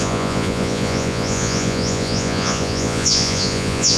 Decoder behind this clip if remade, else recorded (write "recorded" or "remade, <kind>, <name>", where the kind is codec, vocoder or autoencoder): remade, vocoder, Vocos